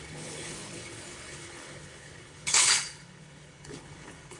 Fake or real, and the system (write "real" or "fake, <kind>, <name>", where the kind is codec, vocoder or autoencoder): fake, codec, HILCodec